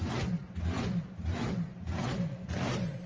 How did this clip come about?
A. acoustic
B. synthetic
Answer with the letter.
A